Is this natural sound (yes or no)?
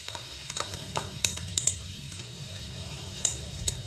no